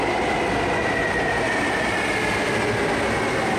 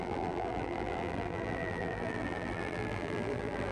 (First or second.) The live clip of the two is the first